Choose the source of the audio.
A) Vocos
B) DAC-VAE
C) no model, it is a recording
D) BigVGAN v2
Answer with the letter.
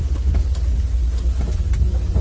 C